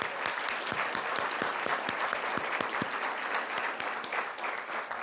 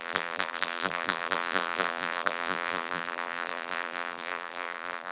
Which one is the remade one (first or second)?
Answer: second